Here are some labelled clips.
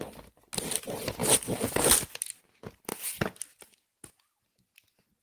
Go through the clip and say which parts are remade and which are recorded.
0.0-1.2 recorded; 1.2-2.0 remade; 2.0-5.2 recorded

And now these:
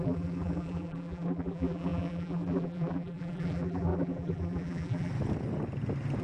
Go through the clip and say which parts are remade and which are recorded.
0.0-5.1 remade; 5.1-6.2 recorded

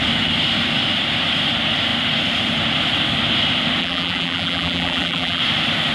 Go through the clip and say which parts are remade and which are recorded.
0.0-3.8 recorded; 3.8-5.4 remade; 5.4-5.9 recorded

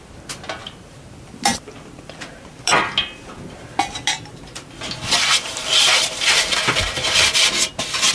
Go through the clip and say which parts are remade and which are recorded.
0.0-0.6 recorded; 0.6-4.7 remade; 4.7-8.1 recorded

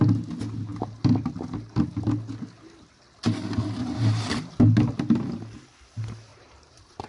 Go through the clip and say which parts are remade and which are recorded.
0.0-3.8 recorded; 3.8-4.6 remade; 4.6-6.3 recorded; 6.3-7.1 remade

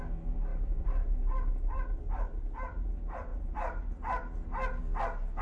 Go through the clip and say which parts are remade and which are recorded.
0.0-0.5 recorded; 0.5-2.0 remade; 2.0-5.4 recorded

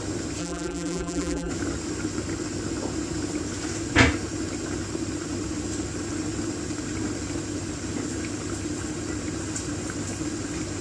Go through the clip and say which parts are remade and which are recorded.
0.0-0.4 recorded; 0.4-1.5 remade; 1.5-10.8 recorded

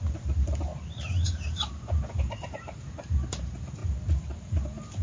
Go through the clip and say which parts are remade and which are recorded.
0.0-0.7 remade; 0.7-1.5 recorded; 1.5-3.8 remade; 3.8-4.4 recorded; 4.4-5.0 remade